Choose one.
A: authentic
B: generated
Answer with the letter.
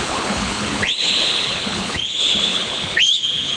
B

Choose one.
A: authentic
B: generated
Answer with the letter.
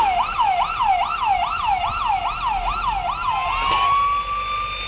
A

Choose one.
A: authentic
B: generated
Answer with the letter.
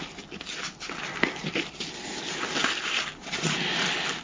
A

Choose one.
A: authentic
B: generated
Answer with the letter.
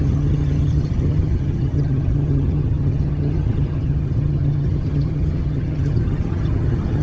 B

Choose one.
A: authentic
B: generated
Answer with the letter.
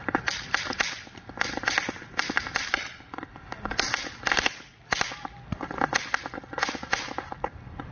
A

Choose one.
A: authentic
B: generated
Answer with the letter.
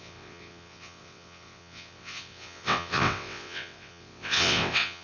B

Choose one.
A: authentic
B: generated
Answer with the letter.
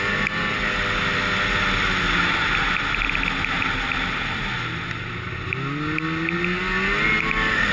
A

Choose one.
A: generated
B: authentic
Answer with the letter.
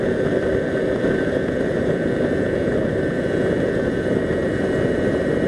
B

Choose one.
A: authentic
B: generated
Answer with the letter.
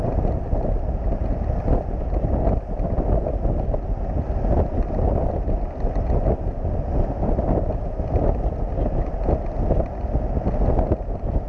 A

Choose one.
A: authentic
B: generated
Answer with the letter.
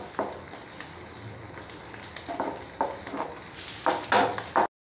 A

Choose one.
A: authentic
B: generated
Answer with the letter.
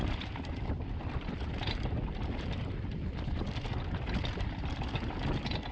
A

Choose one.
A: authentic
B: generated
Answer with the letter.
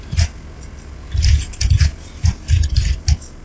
A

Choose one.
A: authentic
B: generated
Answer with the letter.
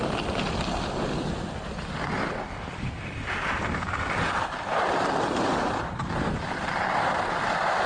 A